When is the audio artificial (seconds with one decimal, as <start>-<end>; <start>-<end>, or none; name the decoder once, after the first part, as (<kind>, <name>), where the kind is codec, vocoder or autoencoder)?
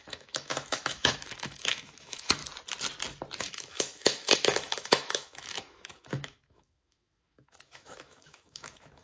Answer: 0.0-2.4 (autoencoder, DAC-VAE); 3.4-9.0